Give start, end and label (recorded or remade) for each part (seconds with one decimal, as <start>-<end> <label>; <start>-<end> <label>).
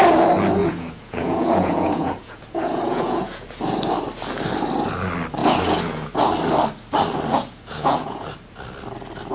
0.0-0.6 recorded; 0.6-3.6 remade; 3.6-5.4 recorded; 5.4-6.3 remade; 6.3-7.3 recorded; 7.3-8.3 remade; 8.3-9.3 recorded